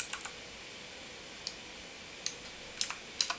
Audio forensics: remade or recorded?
recorded